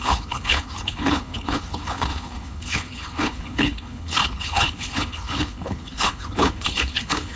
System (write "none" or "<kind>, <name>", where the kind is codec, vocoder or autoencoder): codec, HILCodec